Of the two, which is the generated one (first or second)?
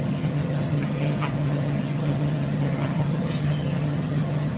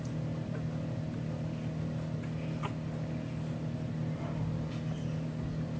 first